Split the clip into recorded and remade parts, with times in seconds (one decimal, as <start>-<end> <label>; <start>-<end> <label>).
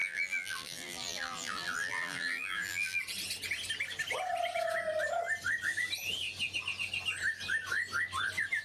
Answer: 0.0-3.0 remade; 3.0-8.6 recorded